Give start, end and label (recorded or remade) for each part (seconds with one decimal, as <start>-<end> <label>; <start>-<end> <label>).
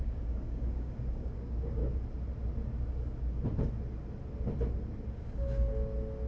0.0-1.8 remade; 1.8-5.1 recorded; 5.1-5.7 remade; 5.7-6.3 recorded